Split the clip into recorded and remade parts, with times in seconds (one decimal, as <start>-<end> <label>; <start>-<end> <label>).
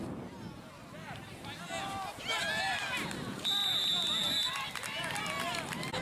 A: 0.0-6.0 recorded